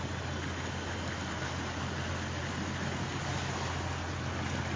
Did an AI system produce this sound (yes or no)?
no